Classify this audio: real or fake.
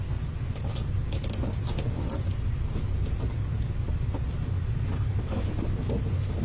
real